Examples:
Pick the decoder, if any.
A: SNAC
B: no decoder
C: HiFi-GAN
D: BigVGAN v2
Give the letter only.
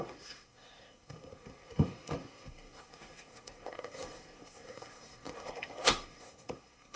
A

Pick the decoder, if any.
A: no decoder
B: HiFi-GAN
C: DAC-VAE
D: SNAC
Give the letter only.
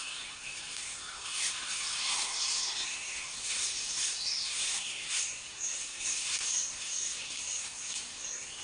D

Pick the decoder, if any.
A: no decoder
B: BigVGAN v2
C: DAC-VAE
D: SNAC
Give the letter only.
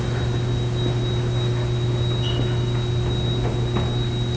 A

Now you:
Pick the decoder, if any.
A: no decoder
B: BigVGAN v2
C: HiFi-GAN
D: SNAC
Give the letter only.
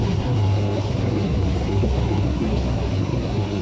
D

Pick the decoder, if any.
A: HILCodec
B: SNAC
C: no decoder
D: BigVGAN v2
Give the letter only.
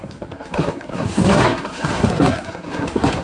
B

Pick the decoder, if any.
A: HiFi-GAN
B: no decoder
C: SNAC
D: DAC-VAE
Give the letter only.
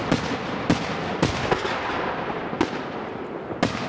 B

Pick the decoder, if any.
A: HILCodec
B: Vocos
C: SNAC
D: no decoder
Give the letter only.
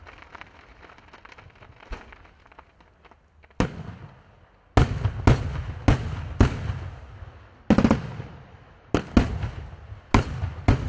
D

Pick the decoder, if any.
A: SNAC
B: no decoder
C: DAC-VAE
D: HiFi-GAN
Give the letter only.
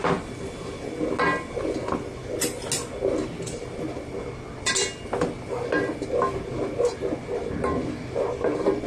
B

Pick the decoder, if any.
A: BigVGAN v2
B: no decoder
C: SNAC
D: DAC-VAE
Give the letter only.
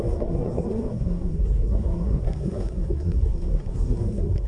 C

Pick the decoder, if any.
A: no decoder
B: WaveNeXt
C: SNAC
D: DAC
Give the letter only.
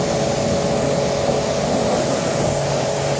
A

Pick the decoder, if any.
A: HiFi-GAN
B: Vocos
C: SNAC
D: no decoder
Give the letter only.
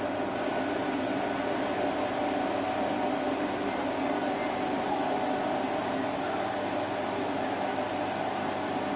D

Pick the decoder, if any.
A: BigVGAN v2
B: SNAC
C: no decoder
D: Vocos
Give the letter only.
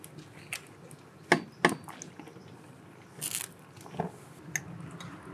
C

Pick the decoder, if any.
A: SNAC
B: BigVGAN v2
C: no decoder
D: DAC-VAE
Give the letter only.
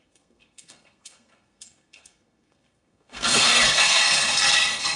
A